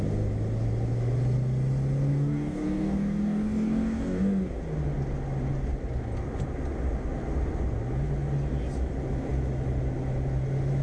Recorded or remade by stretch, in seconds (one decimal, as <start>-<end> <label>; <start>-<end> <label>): 0.0-2.1 recorded; 2.1-4.6 remade; 4.6-10.8 recorded